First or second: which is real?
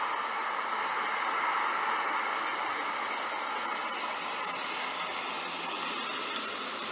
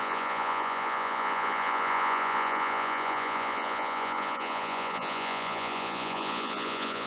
first